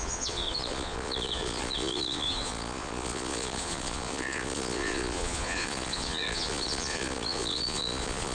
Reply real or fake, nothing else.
fake